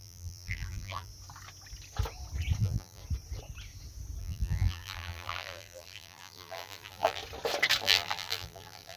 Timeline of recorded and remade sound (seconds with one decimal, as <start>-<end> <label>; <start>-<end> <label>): 0.0-1.1 remade; 1.1-2.6 recorded; 2.6-3.0 remade; 3.0-4.2 recorded; 4.2-7.2 remade; 7.2-7.8 recorded; 7.8-9.0 remade